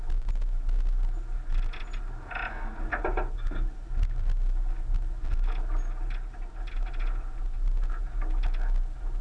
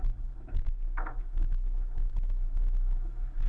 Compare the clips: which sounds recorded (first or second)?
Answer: first